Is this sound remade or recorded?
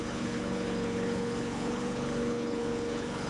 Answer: remade